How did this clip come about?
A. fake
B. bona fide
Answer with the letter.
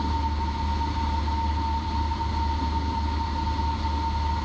B